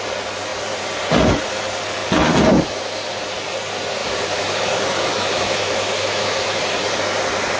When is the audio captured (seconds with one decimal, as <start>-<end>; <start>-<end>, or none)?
0.0-4.0; 6.6-7.6